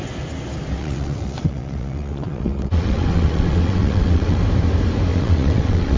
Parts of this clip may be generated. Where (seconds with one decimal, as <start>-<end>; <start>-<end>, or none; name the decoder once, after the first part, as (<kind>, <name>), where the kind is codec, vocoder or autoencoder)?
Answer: 0.8-4.4 (vocoder, WaveNeXt); 5.1-6.0

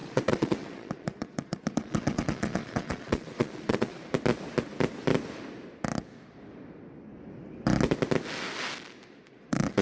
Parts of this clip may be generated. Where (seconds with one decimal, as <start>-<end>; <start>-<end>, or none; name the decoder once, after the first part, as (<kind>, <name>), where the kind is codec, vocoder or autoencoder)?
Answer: 0.0-4.0 (vocoder, Vocos); 9.2-9.8